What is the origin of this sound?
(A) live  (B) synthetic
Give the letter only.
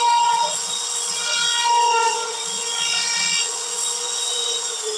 B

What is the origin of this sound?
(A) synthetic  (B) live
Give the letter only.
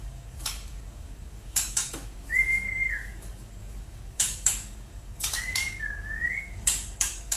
A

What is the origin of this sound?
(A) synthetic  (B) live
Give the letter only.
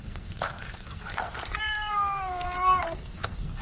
A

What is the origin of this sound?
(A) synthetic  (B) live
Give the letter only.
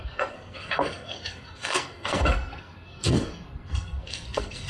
A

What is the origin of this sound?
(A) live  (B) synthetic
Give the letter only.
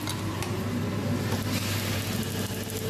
A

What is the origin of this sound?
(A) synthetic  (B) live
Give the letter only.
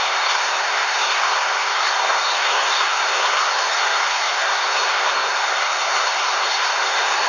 A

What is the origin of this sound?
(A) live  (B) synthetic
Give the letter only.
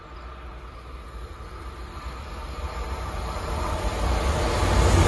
A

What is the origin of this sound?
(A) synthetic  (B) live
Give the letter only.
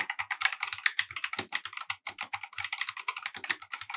A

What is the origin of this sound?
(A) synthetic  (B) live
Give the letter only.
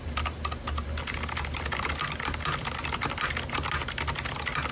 B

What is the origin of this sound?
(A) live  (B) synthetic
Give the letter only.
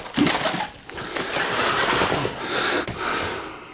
A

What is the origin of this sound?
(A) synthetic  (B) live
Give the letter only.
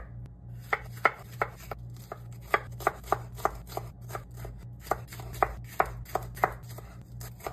B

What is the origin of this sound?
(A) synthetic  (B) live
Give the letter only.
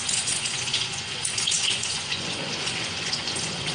A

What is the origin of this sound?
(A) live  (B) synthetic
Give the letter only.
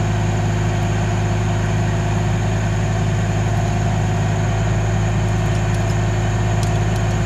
A